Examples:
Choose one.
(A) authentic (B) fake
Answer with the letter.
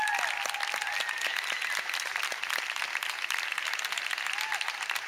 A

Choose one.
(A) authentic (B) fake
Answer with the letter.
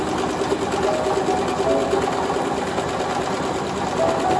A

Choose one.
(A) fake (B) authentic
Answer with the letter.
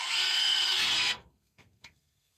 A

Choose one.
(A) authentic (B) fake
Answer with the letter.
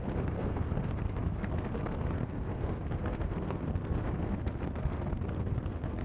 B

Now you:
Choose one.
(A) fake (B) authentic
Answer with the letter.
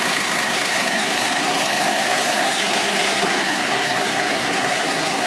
A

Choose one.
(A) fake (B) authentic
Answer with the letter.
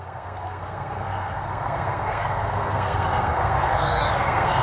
A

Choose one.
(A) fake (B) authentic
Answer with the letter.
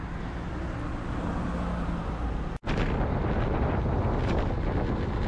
B